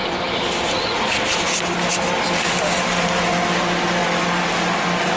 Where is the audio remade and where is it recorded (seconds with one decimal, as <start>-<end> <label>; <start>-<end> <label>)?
0.0-5.2 recorded